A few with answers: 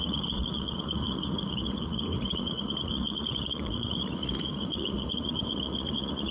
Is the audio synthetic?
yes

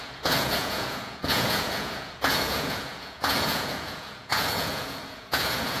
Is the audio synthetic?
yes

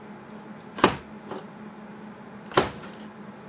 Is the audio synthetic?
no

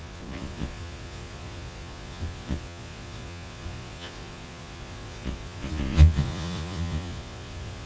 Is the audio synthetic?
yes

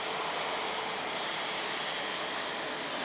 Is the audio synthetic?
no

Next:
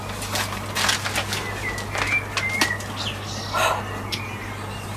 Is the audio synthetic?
no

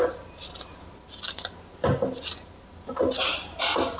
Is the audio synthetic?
no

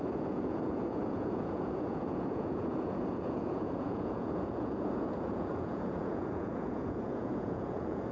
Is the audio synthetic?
yes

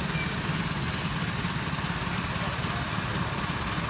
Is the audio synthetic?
no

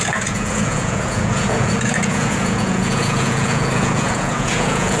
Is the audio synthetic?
yes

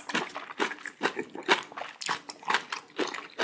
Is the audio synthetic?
no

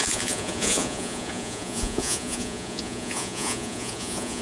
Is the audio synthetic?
yes